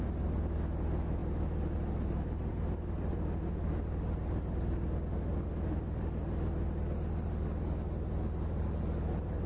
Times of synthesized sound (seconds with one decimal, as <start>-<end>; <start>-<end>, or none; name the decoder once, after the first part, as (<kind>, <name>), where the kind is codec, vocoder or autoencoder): none